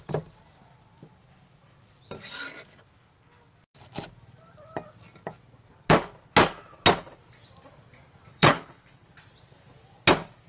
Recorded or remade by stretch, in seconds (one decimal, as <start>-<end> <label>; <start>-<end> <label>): 0.0-8.3 recorded; 8.3-9.1 remade; 9.1-10.5 recorded